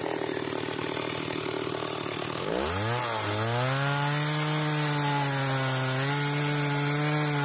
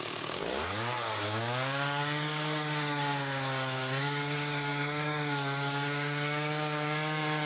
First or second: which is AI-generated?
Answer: second